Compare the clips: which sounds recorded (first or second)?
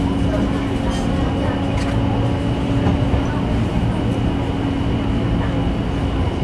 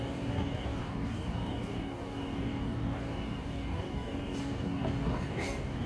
first